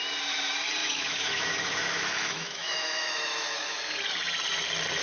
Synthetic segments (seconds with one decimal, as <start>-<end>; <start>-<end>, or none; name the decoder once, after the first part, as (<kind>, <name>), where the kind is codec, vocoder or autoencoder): 0.8-3.8 (autoencoder, DAC-VAE)